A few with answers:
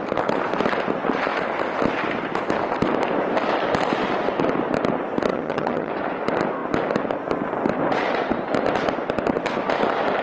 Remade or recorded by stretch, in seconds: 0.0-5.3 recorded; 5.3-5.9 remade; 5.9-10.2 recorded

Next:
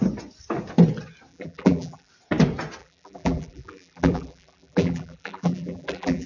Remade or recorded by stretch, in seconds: 0.0-1.3 recorded; 1.3-2.1 remade; 2.1-2.8 recorded; 2.8-6.3 remade

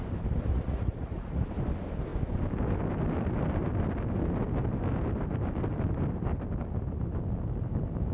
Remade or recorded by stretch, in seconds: 0.0-0.5 recorded; 0.5-1.4 remade; 1.4-8.1 recorded

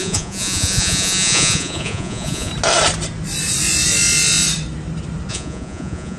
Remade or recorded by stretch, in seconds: 0.0-2.5 remade; 2.5-5.3 recorded; 5.3-6.2 remade

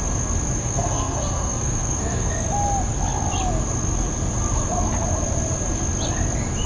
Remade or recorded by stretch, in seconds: 0.0-0.6 recorded; 0.6-2.3 remade; 2.3-6.7 recorded